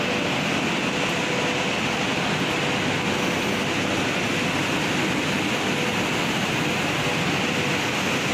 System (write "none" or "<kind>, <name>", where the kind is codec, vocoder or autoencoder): none